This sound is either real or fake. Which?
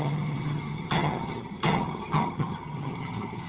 fake